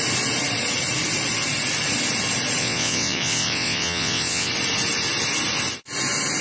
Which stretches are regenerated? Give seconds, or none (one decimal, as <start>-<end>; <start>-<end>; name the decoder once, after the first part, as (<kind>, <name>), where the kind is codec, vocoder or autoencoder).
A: 2.6-4.5 (vocoder, WaveNeXt)